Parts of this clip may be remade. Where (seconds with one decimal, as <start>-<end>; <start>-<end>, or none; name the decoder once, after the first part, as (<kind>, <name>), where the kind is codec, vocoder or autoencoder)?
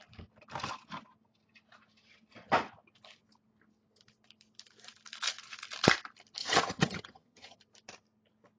6.4-7.6 (vocoder, HiFi-GAN)